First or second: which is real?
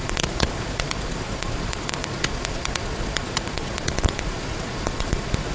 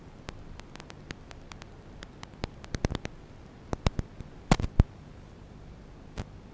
second